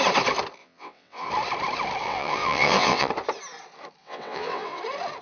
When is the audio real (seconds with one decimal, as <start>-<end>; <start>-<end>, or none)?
0.0-0.6; 1.3-2.0; 3.1-4.0; 4.8-5.2